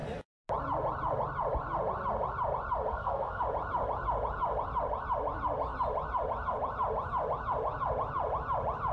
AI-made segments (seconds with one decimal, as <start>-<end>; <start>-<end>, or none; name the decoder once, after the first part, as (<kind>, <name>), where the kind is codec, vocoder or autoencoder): 2.9-3.4 (codec, SNAC)